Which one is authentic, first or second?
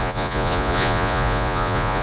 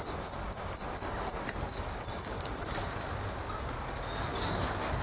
second